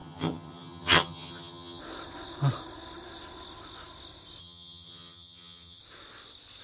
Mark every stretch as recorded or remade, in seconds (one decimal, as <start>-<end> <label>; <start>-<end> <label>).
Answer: 0.0-1.8 remade; 1.8-4.4 recorded; 4.4-5.8 remade; 5.8-6.6 recorded